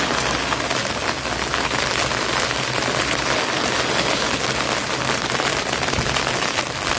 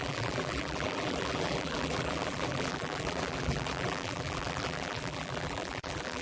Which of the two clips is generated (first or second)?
second